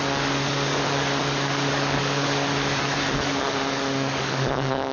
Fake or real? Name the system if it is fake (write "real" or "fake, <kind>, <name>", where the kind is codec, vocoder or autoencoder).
fake, codec, DAC